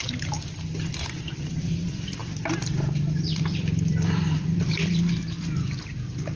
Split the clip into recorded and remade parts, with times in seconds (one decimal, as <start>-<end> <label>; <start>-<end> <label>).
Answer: 0.0-6.4 remade

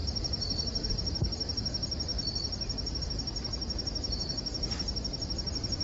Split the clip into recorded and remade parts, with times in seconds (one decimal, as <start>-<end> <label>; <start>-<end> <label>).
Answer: 0.0-0.9 remade; 0.9-5.8 recorded

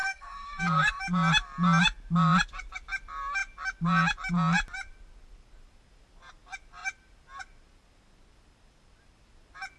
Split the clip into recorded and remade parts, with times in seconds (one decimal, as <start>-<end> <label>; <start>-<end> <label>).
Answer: 0.0-1.0 remade; 1.0-9.8 recorded

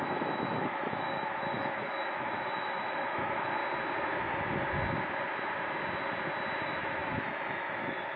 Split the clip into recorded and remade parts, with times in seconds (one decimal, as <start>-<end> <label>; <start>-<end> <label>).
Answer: 0.0-3.6 remade; 3.6-6.6 recorded; 6.6-8.2 remade

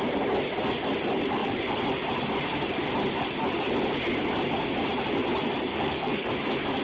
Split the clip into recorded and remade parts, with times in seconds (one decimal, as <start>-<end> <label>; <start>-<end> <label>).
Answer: 0.0-5.7 recorded; 5.7-6.3 remade; 6.3-6.8 recorded

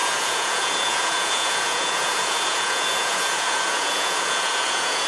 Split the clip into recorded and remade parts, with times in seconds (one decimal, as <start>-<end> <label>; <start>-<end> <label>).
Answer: 0.0-5.1 remade